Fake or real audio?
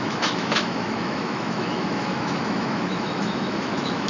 fake